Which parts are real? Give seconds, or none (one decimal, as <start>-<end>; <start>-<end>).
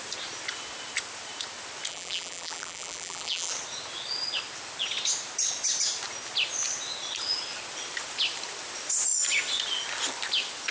0.0-1.9; 3.5-10.7